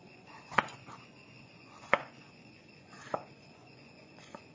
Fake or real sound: fake